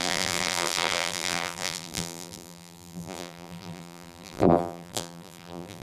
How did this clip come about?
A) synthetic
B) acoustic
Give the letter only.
A